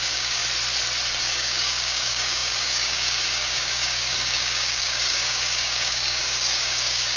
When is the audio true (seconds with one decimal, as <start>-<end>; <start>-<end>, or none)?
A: 0.4-1.2